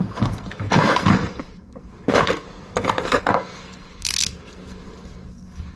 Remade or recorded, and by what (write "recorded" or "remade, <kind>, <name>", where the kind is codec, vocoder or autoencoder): remade, codec, SNAC